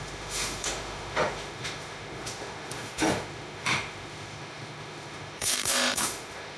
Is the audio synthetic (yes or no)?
yes